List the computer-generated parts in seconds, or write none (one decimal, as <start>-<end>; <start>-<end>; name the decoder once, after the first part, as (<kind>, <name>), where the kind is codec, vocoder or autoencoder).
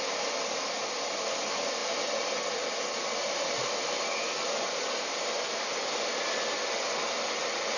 none